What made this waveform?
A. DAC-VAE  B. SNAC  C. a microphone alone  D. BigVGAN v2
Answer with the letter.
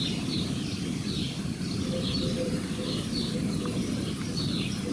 D